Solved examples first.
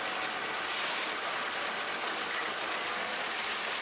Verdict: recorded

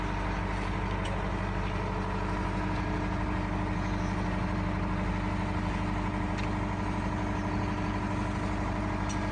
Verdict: recorded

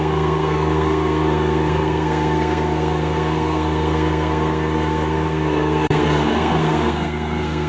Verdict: remade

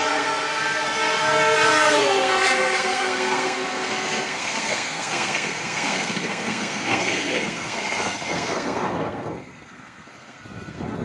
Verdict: remade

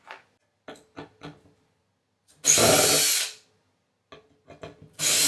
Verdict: recorded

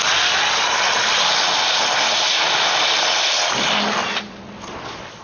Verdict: recorded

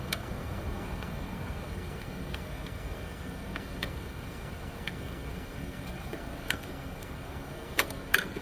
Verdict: remade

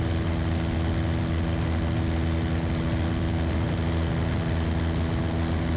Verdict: recorded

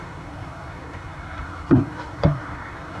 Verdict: remade